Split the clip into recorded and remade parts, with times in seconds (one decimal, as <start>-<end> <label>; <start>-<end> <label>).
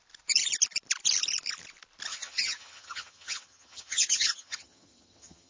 0.0-2.1 recorded; 2.1-5.5 remade